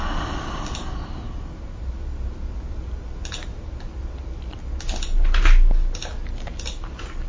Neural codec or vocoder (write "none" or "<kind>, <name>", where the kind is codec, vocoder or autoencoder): none